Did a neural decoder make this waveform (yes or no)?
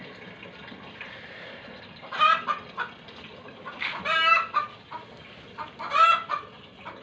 no